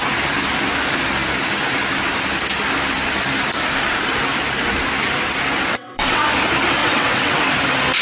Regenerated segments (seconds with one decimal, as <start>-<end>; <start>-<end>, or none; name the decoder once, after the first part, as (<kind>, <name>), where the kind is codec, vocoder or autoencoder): 5.7-6.2 (vocoder, WaveNeXt); 6.8-7.4